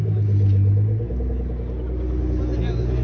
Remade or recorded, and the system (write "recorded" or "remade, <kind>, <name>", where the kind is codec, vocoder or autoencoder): recorded